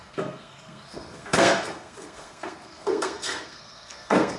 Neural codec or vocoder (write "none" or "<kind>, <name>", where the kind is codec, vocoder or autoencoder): codec, SNAC